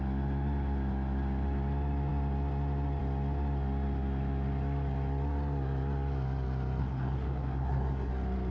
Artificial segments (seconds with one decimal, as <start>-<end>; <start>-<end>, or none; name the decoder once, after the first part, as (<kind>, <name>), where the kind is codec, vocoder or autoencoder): 6.8-8.1 (codec, SNAC)